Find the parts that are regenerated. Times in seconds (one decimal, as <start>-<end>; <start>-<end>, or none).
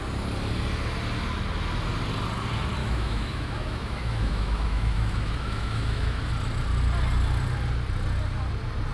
2.8-6.3